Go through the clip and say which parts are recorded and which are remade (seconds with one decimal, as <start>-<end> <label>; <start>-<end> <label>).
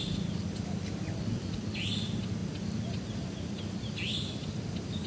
0.0-5.1 recorded